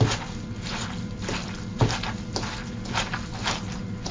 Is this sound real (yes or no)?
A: yes